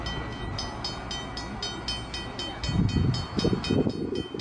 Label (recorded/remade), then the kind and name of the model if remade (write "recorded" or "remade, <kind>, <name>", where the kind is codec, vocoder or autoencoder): recorded